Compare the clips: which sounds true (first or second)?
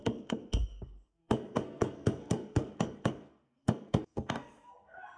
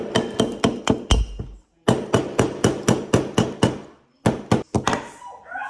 second